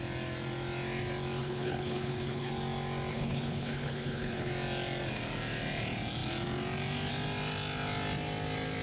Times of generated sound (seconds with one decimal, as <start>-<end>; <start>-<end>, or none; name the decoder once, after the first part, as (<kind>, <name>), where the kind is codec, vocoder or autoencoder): 1.4-2.5 (codec, HILCodec); 3.1-4.5